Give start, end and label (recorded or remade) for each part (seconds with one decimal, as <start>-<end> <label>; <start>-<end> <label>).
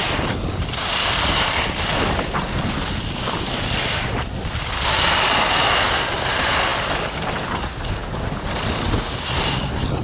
0.0-10.0 recorded